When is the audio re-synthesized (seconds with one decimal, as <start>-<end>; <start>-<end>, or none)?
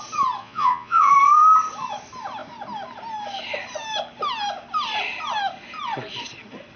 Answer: 0.4-1.1